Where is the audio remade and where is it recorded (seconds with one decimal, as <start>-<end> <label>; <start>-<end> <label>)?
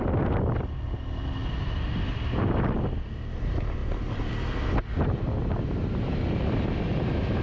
0.0-7.4 recorded